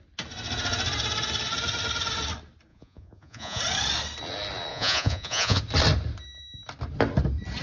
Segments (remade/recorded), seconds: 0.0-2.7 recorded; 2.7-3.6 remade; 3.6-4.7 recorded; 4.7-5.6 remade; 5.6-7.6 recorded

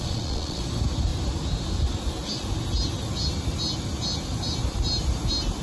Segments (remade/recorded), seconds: 0.0-0.6 remade; 0.6-5.6 recorded